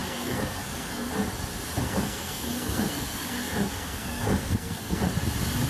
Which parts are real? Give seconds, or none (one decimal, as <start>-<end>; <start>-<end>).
1.1-1.8; 5.1-5.7